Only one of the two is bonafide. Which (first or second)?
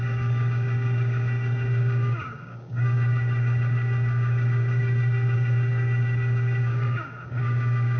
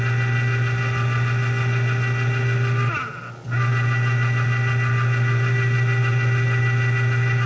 second